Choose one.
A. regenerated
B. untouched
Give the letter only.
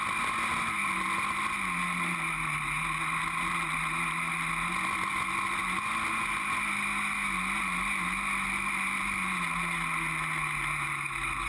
B